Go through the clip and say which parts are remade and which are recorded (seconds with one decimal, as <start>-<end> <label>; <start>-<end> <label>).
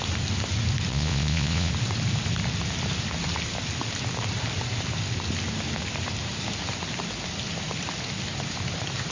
0.0-0.9 recorded; 0.9-1.7 remade; 1.7-9.1 recorded